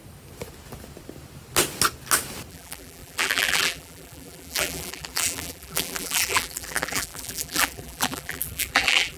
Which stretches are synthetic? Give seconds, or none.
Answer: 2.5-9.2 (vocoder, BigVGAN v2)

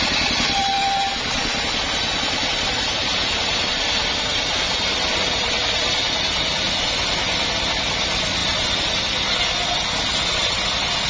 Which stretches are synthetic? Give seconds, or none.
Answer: 8.4-9.0 (vocoder, BigVGAN v2)

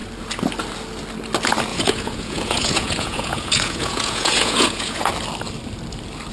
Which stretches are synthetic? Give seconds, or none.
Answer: 1.7-5.1 (vocoder, Vocos)

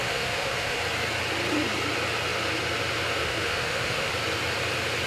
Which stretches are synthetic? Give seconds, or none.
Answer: 0.0-0.8 (autoencoder, DAC-VAE); 3.2-4.1

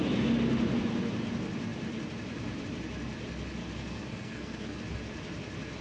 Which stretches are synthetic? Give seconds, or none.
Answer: 3.6-4.8 (codec, SNAC)

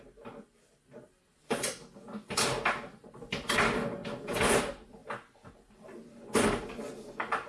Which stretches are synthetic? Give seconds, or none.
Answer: none

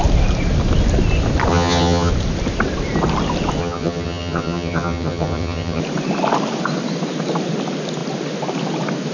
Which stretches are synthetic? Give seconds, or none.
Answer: 1.5-2.1 (vocoder, HiFi-GAN); 3.6-5.8